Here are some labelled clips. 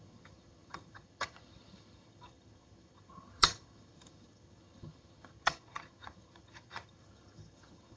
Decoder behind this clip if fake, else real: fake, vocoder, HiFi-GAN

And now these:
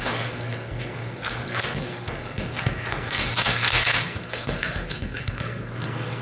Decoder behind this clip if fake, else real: fake, codec, SNAC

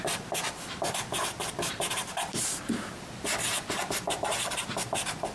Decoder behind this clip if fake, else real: fake, vocoder, BigVGAN v2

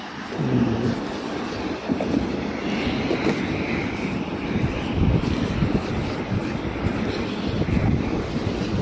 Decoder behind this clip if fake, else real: real